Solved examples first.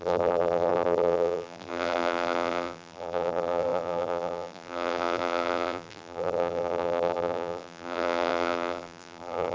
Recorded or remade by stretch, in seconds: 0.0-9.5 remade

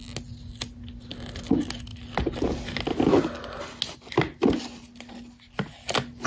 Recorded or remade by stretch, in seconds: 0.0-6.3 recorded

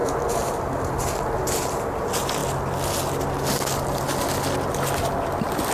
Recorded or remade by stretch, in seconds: 0.0-5.7 recorded